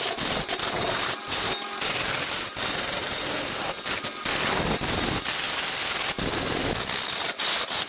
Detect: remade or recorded recorded